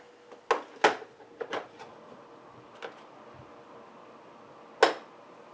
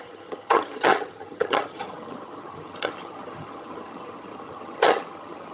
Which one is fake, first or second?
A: second